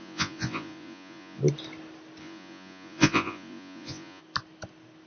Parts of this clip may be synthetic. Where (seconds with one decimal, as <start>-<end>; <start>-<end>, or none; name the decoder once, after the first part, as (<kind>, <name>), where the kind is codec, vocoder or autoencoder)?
0.0-1.4 (vocoder, Vocos); 2.2-4.2